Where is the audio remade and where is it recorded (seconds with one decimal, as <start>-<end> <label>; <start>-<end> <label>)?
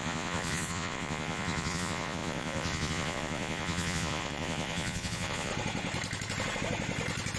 0.0-5.5 remade; 5.5-7.4 recorded